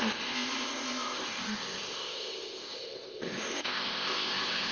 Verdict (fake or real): fake